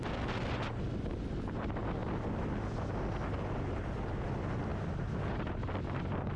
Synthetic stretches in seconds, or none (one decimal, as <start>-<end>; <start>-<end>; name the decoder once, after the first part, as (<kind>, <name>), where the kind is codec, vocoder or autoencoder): none